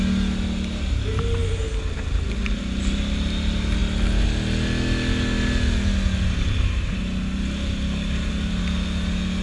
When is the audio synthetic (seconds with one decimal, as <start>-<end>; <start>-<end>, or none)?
none